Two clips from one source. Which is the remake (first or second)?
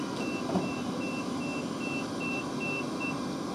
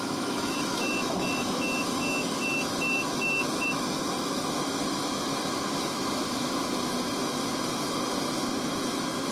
second